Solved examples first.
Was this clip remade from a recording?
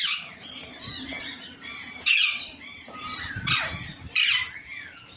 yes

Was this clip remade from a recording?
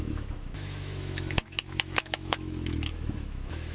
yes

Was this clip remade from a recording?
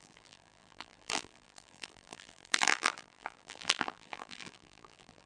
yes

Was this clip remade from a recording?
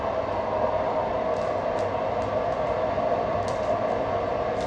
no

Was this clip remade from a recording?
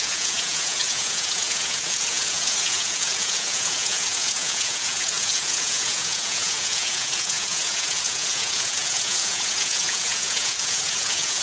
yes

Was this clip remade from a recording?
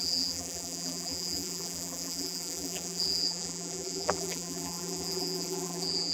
yes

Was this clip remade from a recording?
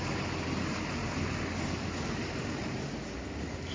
no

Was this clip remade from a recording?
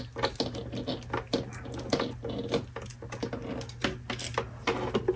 no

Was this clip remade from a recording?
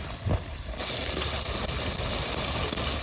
no